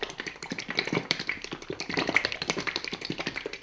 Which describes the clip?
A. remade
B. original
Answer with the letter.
A